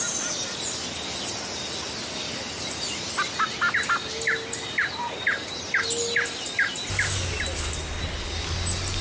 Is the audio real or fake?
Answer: real